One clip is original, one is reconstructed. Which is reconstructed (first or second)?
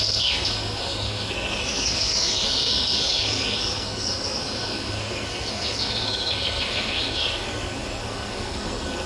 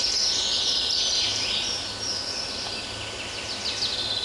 first